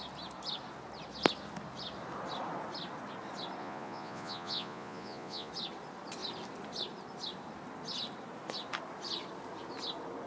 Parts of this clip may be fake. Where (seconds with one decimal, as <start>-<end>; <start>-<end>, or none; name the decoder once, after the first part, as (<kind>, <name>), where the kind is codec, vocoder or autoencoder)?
3.6-5.5 (vocoder, Vocos)